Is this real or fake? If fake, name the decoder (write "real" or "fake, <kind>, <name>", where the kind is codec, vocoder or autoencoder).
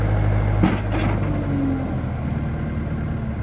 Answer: real